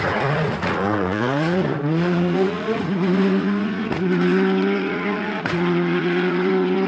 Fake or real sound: fake